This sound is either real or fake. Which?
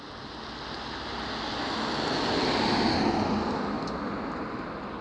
real